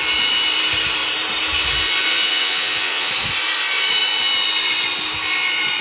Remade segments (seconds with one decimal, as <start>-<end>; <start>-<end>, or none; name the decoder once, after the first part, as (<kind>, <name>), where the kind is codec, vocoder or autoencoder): 2.1-3.1 (vocoder, Vocos)

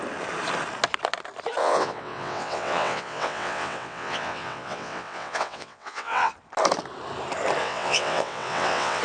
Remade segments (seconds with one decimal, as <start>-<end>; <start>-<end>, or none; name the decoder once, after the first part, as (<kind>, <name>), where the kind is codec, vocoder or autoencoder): 1.6-6.3 (vocoder, WaveNeXt); 7.6-9.0

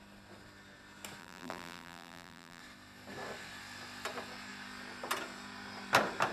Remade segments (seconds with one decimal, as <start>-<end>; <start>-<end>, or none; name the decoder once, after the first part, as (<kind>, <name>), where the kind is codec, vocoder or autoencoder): 1.2-2.6 (vocoder, BigVGAN v2)

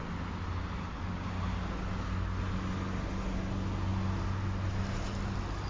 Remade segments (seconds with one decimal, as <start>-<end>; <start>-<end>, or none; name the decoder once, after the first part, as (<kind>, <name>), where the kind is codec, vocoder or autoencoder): none